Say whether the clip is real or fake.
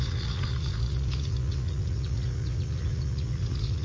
fake